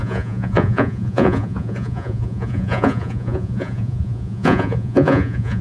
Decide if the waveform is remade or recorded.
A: remade